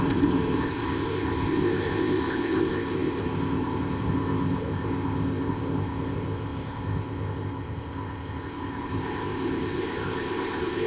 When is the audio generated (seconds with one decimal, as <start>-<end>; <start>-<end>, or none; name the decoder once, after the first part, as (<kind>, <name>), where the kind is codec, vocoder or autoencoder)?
0.0-10.9 (codec, ZipCodec)